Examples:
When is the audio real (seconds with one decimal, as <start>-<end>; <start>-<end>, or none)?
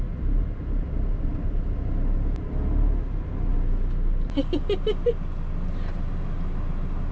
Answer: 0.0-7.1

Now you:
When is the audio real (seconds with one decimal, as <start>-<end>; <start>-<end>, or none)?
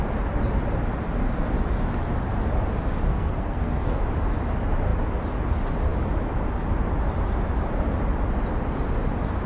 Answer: 0.0-3.1; 4.0-9.5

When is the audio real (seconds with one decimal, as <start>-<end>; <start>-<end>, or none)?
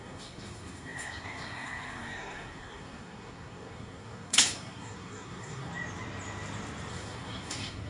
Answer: 5.7-6.9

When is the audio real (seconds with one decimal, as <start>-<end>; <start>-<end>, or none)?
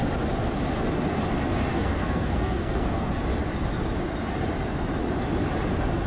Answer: 0.0-1.7; 3.2-6.1